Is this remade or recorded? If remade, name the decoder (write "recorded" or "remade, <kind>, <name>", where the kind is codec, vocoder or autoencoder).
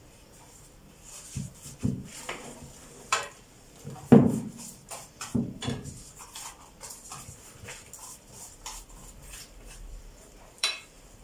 remade, vocoder, BigVGAN v2